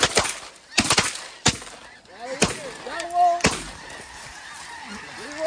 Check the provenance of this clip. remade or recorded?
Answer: recorded